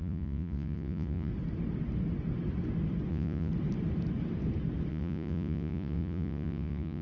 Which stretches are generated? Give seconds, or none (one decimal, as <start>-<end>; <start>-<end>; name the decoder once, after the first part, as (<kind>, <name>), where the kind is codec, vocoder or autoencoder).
0.0-1.3 (vocoder, Vocos); 3.1-3.5; 4.9-7.0

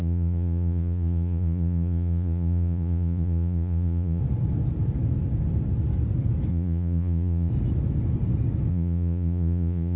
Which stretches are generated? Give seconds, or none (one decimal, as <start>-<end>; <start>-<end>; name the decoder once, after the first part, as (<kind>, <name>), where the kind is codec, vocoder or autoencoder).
0.0-4.2 (vocoder, Vocos); 6.5-7.5; 8.7-10.0

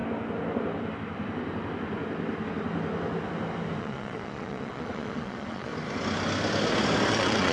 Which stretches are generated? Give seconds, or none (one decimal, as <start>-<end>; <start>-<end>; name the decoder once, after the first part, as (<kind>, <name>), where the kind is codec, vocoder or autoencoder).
3.8-5.7 (vocoder, Vocos); 7.1-7.5

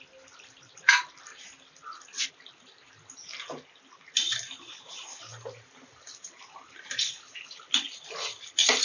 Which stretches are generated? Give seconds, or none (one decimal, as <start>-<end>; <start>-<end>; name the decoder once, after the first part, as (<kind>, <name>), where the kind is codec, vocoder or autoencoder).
none

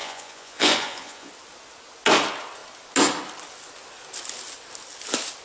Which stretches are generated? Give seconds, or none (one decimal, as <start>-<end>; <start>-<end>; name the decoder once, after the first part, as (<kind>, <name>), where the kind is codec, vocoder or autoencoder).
0.0-1.3 (vocoder, Vocos)

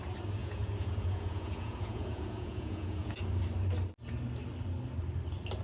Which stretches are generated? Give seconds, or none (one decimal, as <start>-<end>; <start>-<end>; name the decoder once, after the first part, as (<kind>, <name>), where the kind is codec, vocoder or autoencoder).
0.4-3.2 (vocoder, Vocos)